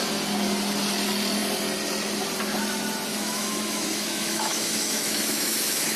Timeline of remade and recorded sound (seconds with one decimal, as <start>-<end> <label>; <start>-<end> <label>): 0.0-3.1 recorded; 3.1-6.0 remade